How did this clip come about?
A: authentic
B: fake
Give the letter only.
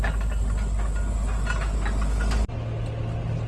A